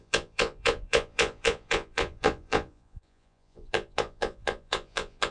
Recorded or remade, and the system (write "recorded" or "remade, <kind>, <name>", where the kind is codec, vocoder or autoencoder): remade, vocoder, Vocos